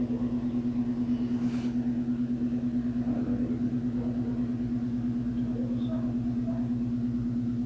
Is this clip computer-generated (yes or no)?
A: no